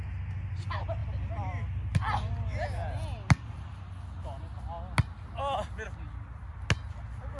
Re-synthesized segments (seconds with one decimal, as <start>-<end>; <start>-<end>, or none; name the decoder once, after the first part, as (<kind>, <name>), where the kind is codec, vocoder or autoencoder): none